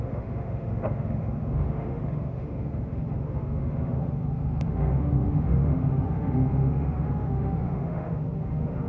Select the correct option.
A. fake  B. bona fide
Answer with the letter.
A